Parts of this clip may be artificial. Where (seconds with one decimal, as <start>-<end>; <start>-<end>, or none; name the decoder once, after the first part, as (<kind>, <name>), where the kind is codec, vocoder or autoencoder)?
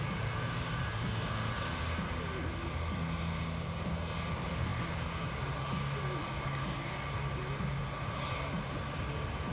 none